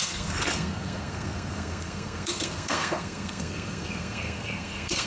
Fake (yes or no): yes